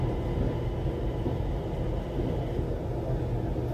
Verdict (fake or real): real